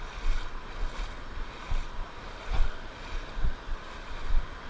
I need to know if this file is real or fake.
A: real